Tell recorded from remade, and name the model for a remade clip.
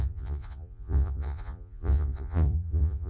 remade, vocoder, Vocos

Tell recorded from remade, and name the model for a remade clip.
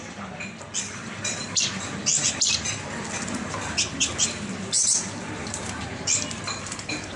remade, vocoder, BigVGAN v2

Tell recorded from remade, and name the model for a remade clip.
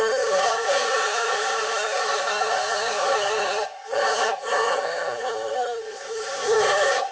remade, codec, SNAC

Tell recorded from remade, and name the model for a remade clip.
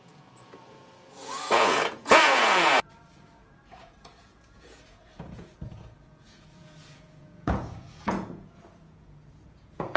remade, vocoder, Vocos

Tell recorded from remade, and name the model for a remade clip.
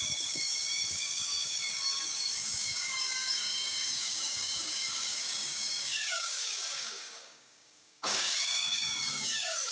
remade, codec, DAC